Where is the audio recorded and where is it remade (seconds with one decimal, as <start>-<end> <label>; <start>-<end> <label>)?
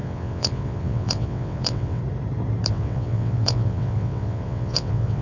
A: 0.0-2.0 remade; 2.0-2.7 recorded; 2.7-5.2 remade